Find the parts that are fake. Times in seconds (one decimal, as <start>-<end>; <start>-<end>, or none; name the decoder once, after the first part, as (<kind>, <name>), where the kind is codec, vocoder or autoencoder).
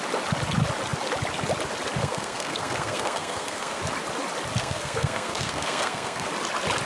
2.0-3.8 (codec, SNAC); 4.6-6.3